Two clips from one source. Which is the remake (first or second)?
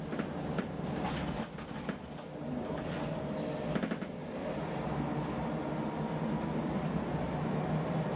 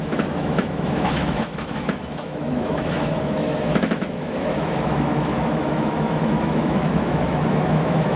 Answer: second